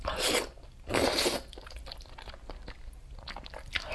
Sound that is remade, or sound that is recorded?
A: recorded